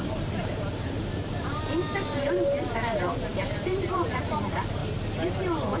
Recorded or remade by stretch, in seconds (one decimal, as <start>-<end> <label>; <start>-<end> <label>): 0.0-4.8 remade; 4.8-5.8 recorded